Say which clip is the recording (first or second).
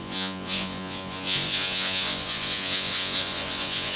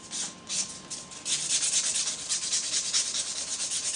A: second